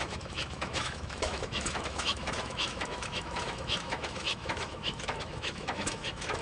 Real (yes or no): no